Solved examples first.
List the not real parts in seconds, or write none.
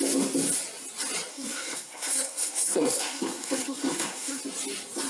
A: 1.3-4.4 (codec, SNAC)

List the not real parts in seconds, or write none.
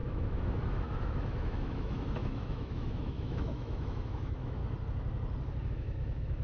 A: 0.0-4.6 (autoencoder, DAC-VAE); 5.7-6.4